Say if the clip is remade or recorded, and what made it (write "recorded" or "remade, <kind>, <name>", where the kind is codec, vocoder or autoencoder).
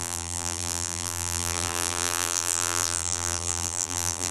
remade, vocoder, BigVGAN v2